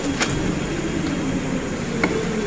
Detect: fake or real real